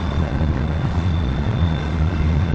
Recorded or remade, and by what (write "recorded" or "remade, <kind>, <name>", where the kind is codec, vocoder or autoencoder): remade, vocoder, Vocos